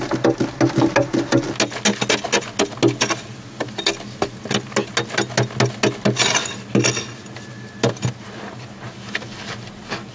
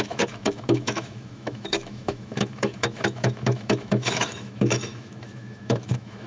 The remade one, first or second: second